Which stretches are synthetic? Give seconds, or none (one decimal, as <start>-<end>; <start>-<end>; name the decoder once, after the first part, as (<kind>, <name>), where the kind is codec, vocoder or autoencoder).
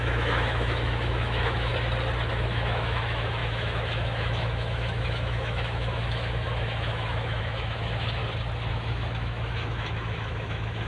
0.0-1.7 (autoencoder, DAC-VAE); 2.3-8.2; 8.7-10.9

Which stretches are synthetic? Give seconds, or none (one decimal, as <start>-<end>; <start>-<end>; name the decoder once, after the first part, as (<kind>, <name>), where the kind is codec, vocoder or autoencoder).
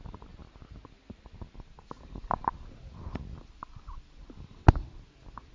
none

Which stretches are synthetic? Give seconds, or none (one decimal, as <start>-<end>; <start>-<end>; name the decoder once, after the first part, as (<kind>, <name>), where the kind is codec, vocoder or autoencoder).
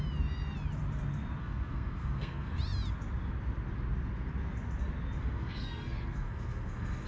1.4-2.5 (codec, SNAC); 5.2-7.1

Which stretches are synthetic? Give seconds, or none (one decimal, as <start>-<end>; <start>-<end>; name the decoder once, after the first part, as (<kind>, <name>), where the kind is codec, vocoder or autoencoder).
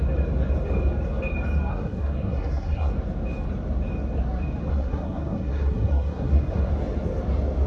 1.7-2.9 (codec, SNAC); 4.7-6.7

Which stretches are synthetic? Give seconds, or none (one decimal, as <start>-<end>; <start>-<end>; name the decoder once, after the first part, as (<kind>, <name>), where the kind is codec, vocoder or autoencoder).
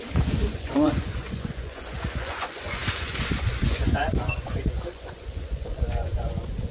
0.0-6.7 (vocoder, Vocos)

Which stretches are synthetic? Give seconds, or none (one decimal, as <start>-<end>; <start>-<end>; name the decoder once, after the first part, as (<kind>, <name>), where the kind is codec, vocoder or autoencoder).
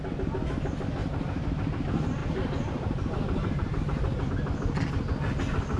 1.0-1.7 (vocoder, BigVGAN v2); 2.2-4.3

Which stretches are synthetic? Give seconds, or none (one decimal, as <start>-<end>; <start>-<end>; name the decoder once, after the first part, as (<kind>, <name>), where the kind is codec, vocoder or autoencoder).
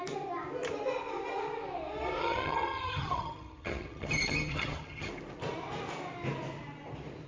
2.2-5.1 (vocoder, HiFi-GAN)